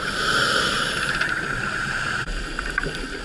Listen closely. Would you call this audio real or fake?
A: fake